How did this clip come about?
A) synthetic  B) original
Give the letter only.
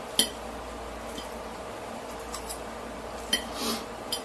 B